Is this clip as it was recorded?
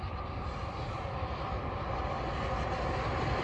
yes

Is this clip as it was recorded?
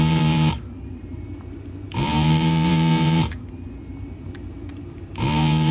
no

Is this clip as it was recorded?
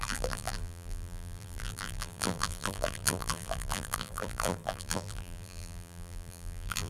no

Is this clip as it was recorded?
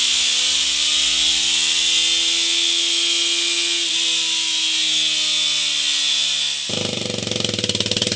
yes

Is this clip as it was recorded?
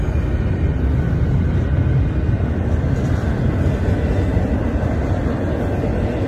yes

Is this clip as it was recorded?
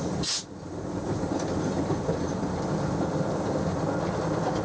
yes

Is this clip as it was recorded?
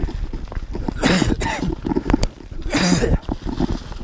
yes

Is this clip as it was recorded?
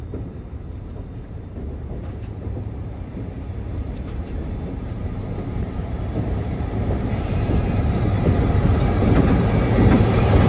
no